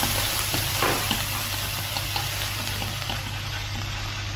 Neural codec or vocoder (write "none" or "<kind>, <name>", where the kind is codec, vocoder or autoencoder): none